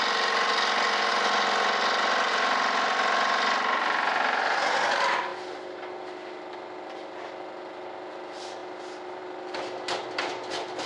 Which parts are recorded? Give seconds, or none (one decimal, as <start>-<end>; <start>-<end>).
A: 0.0-10.9